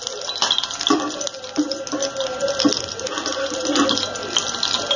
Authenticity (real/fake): real